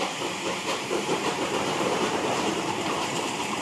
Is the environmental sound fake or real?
fake